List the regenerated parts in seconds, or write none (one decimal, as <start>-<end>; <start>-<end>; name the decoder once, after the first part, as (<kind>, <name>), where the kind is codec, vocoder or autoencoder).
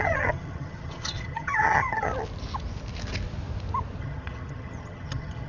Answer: 0.0-2.1 (vocoder, HiFi-GAN); 4.0-5.5